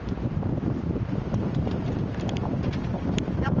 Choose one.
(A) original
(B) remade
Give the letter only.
B